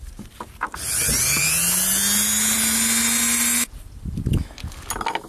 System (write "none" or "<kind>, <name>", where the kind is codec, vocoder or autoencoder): none